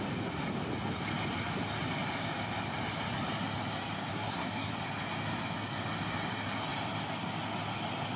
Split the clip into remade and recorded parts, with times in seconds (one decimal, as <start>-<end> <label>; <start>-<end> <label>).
0.0-4.1 recorded; 4.1-4.7 remade; 4.7-8.2 recorded